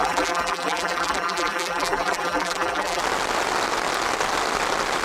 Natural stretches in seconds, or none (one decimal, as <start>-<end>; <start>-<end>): 3.0-5.0